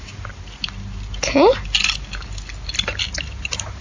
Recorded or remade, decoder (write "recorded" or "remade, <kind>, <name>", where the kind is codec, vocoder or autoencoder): recorded